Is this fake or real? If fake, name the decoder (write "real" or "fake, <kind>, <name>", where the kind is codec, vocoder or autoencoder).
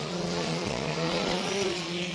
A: fake, vocoder, Vocos